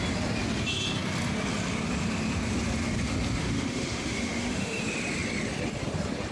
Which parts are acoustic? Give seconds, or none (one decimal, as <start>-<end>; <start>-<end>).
0.0-3.4; 4.8-6.3

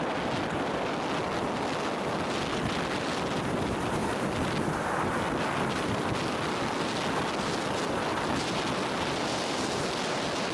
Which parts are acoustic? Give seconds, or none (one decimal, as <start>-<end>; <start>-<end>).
0.0-10.5